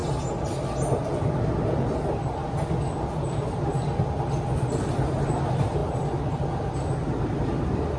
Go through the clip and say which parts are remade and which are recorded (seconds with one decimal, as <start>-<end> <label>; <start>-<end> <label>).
0.0-8.0 recorded